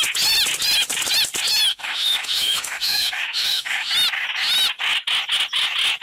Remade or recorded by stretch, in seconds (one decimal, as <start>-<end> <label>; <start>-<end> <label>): 0.0-1.7 recorded; 1.7-3.9 remade; 3.9-6.0 recorded